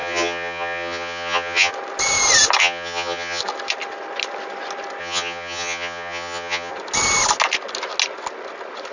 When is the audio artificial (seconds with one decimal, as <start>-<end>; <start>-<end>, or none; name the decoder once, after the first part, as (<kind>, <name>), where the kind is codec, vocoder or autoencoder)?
0.0-1.7 (vocoder, HiFi-GAN); 2.6-3.4; 5.0-6.7

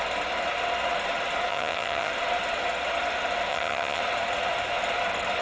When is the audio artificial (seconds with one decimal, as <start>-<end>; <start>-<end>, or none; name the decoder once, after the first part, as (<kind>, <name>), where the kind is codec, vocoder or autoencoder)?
1.5-2.1 (vocoder, HiFi-GAN); 3.5-4.0